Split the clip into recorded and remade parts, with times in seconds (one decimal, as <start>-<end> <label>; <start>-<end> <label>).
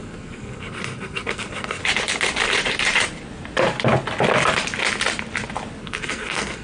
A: 0.0-1.8 remade; 1.8-5.8 recorded; 5.8-6.6 remade